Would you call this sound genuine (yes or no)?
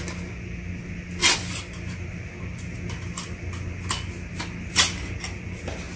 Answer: yes